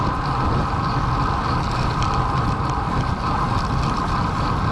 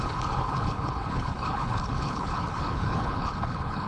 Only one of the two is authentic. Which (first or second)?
first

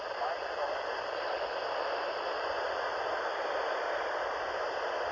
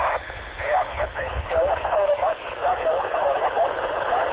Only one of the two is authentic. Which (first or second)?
first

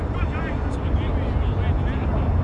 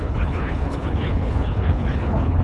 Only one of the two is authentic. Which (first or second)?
first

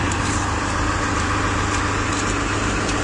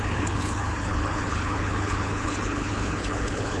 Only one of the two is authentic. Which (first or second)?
first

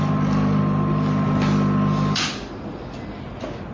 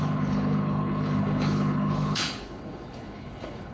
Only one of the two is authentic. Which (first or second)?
first